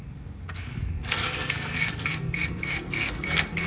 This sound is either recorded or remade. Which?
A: remade